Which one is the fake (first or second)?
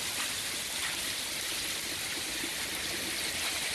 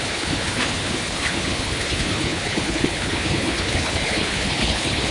second